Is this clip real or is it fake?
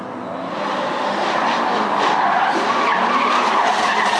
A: real